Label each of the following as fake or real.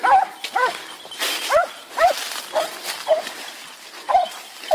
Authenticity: real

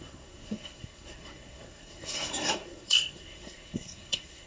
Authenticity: fake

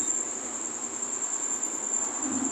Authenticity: real